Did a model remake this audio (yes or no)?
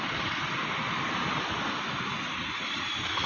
no